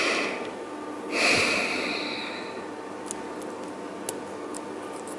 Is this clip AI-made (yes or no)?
no